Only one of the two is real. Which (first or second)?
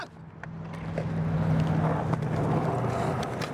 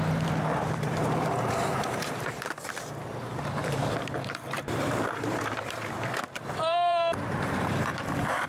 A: first